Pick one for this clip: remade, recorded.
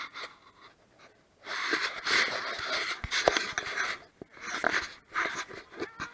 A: recorded